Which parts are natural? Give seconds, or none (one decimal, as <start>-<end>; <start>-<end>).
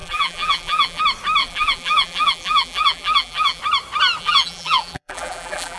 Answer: 1.0-1.4; 3.6-4.2